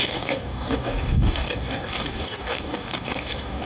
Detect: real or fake fake